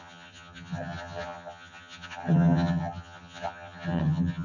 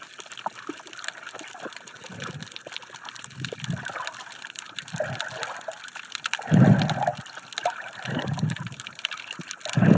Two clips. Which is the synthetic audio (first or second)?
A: first